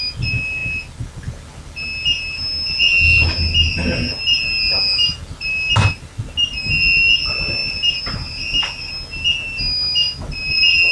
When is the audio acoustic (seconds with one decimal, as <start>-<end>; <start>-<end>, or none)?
0.0-10.9